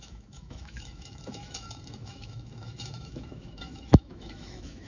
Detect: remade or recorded remade